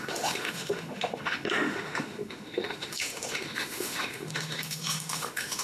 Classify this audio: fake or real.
fake